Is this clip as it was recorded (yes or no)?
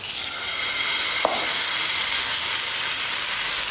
yes